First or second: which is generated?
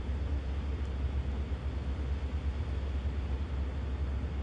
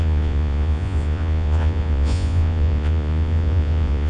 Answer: second